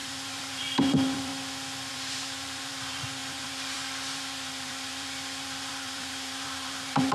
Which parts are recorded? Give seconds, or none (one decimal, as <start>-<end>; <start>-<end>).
1.3-1.9